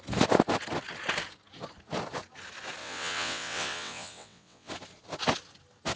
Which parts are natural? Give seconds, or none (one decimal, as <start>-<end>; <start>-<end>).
0.0-2.8; 4.7-6.0